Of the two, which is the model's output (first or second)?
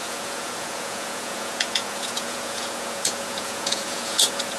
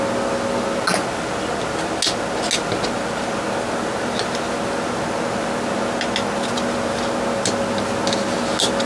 first